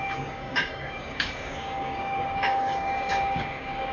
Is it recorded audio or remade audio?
remade